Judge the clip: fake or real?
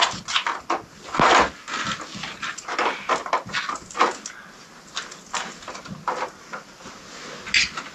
real